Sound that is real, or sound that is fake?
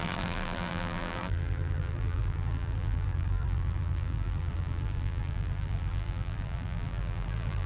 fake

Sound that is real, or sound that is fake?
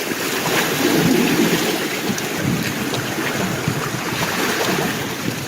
real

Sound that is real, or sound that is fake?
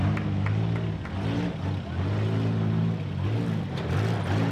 real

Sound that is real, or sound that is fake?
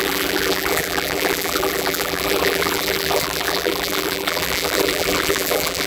fake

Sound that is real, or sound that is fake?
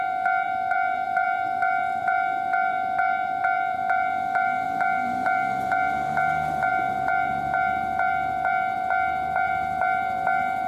fake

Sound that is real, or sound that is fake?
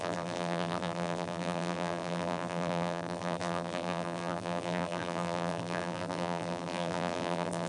fake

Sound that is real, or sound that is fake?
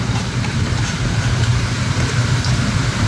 fake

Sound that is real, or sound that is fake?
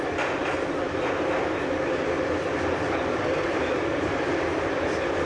real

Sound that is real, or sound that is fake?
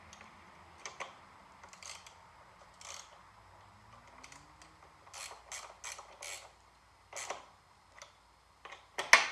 real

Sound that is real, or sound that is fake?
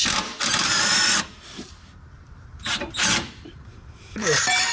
fake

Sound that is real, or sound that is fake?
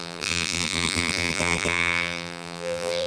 fake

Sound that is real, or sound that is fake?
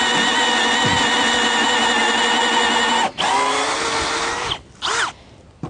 real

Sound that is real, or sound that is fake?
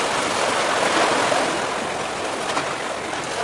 real